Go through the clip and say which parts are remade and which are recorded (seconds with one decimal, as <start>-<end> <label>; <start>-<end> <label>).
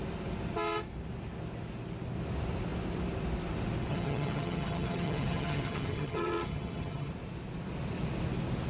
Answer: 0.0-3.9 recorded; 3.9-7.1 remade; 7.1-8.7 recorded